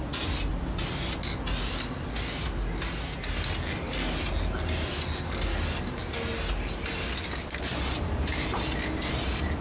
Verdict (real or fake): real